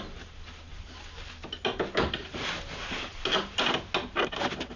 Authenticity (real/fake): real